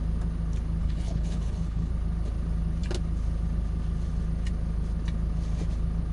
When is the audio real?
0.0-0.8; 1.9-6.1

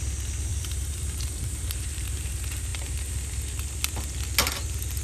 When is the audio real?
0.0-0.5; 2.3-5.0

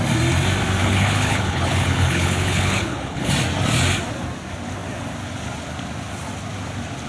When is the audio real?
0.0-0.8; 3.3-7.1